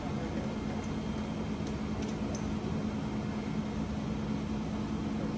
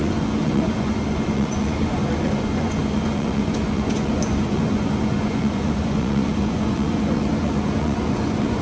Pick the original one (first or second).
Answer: first